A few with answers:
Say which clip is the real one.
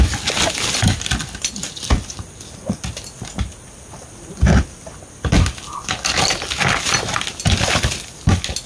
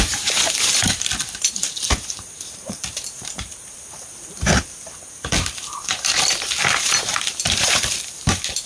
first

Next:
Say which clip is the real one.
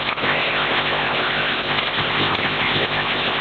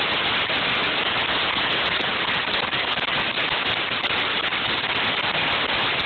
second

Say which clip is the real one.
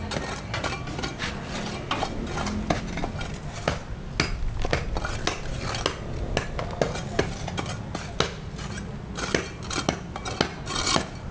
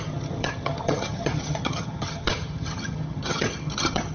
first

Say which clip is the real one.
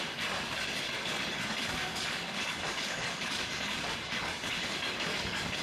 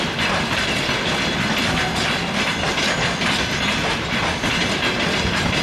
second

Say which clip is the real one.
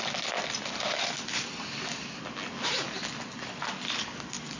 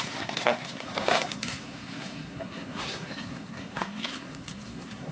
first